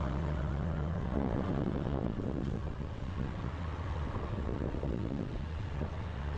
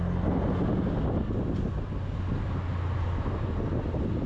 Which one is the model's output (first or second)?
first